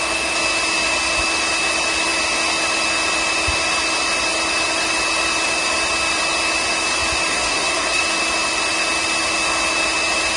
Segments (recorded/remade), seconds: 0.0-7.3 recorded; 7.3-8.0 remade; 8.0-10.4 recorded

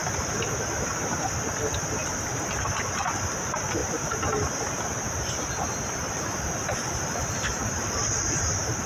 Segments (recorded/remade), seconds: 0.0-2.0 recorded; 2.0-2.8 remade; 2.8-8.9 recorded

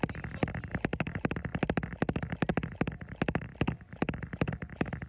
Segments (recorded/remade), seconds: 0.0-5.1 recorded

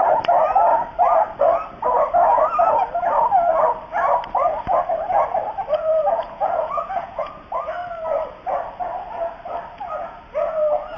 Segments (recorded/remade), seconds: 0.0-6.0 recorded; 6.0-7.3 remade; 7.3-11.0 recorded

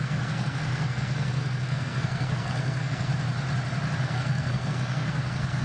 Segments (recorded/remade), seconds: 0.0-3.1 remade; 3.1-4.0 recorded; 4.0-5.6 remade